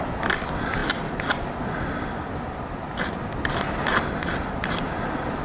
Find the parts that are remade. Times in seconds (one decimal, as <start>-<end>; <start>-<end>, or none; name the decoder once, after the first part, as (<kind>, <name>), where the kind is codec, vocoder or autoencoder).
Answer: none